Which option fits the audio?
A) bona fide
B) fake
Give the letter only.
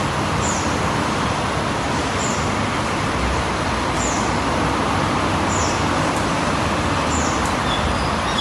A